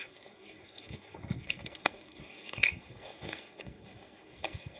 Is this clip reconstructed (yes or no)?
yes